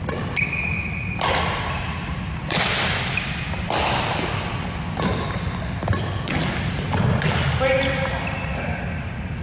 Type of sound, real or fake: real